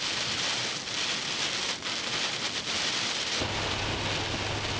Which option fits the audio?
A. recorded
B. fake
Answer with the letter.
A